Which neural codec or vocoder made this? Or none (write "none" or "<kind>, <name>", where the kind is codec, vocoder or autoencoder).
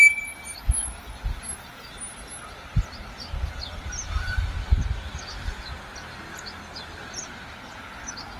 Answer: none